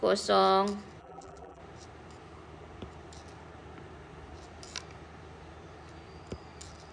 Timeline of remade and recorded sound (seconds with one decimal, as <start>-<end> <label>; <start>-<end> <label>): 0.0-1.0 recorded; 1.0-1.6 remade; 1.6-6.9 recorded